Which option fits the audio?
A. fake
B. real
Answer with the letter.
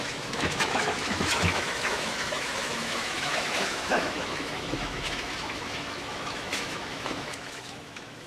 A